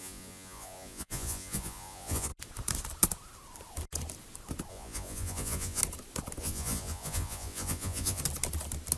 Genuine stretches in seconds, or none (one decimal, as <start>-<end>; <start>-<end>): 2.3-4.7; 5.8-6.4; 8.2-9.0